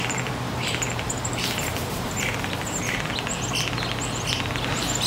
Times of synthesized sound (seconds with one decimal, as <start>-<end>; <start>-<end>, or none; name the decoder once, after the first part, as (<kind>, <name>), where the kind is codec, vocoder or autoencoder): 0.5-3.1 (vocoder, BigVGAN v2)